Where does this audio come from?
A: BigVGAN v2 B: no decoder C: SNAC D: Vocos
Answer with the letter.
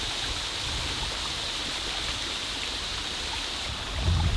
B